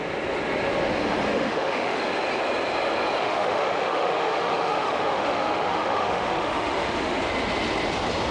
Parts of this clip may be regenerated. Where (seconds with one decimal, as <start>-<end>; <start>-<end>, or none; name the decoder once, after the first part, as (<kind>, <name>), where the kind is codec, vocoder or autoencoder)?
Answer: 1.3-2.0 (autoencoder, DAC-VAE); 3.2-7.2